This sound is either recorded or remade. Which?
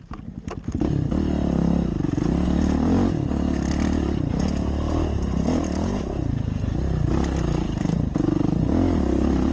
recorded